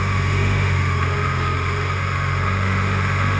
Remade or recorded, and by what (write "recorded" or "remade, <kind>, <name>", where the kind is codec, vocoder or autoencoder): remade, autoencoder, DAC-VAE